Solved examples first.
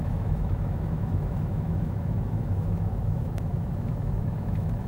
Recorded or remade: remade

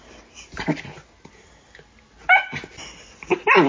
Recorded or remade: recorded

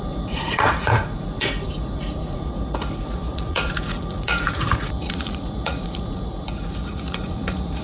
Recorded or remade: remade